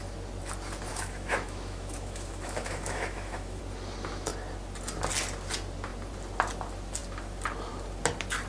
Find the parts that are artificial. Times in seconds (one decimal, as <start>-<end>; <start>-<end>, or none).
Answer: 0.9-3.6